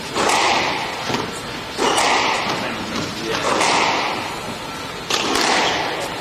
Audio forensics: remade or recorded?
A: recorded